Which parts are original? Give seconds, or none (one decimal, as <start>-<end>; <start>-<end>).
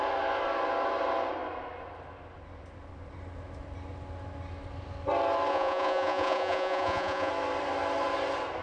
0.0-5.5; 7.3-8.6